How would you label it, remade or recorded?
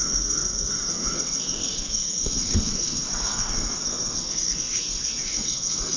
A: remade